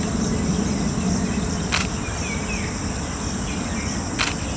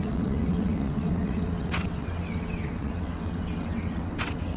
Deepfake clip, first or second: second